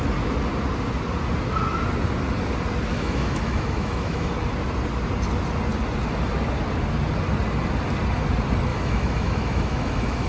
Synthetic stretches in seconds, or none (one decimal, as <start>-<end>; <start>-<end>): 2.9-4.3; 8.7-10.3